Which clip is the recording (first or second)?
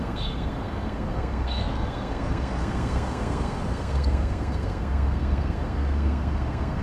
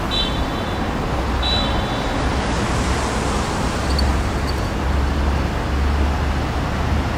second